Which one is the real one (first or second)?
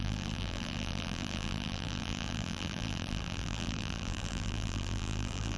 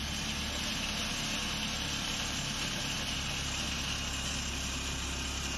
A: second